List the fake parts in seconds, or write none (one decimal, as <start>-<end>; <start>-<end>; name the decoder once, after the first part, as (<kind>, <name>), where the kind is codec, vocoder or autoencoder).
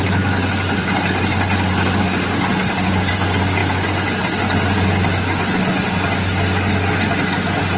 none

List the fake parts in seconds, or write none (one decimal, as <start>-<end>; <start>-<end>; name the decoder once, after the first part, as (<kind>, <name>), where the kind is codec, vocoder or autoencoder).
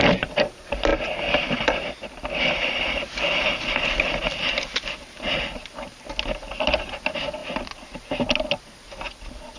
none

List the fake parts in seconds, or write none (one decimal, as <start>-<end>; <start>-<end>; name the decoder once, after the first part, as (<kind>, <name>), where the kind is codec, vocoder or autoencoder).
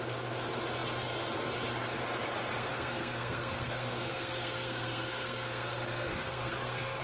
2.6-7.0 (codec, SNAC)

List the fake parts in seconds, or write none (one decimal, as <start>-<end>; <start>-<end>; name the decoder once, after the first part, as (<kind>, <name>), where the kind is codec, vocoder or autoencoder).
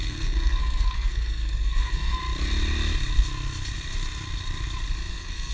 0.0-2.2 (codec, SNAC); 5.1-5.5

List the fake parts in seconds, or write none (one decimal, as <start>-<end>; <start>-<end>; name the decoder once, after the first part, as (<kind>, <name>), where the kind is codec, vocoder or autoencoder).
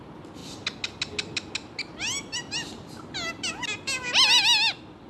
none